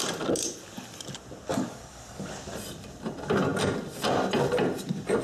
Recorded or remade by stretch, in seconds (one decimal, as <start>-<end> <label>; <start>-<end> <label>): 0.0-1.5 recorded; 1.5-2.3 remade; 2.3-5.2 recorded